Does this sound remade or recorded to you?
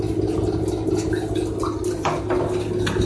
recorded